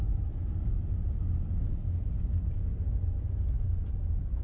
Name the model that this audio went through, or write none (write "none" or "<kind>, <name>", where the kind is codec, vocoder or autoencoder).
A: none